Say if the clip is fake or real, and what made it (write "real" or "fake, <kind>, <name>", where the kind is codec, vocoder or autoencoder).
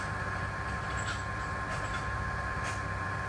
fake, vocoder, BigVGAN v2